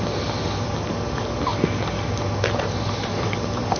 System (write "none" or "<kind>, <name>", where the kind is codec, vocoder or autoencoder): none